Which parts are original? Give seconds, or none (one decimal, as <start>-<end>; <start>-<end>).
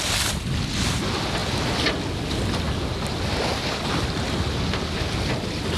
0.0-5.8